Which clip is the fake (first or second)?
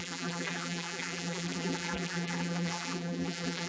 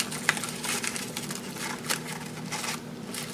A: first